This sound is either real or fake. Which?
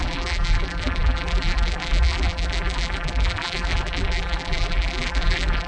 fake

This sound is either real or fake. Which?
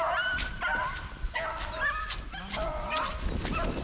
real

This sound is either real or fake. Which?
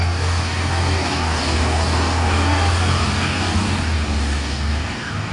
fake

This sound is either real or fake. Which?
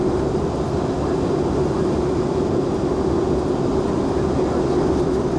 real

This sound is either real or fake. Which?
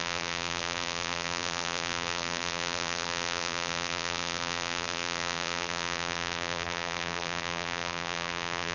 fake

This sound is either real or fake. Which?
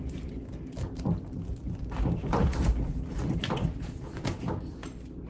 real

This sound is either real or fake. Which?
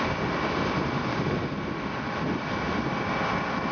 real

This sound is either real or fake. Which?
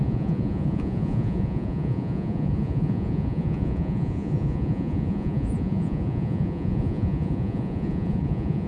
fake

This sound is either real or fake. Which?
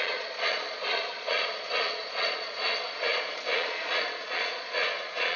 fake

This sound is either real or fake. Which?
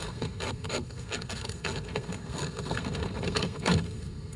fake